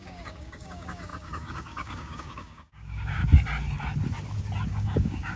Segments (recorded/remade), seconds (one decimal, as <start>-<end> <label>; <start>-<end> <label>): 0.0-3.2 remade; 3.2-4.7 recorded; 4.7-5.4 remade